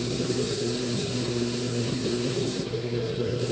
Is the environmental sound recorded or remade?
remade